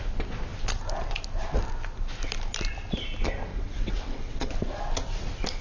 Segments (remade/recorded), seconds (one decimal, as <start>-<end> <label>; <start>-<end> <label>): 0.0-3.5 recorded; 3.5-4.5 remade; 4.5-5.6 recorded